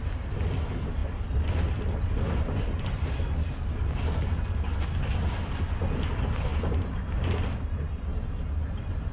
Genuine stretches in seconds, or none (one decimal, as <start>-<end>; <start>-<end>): 0.0-9.1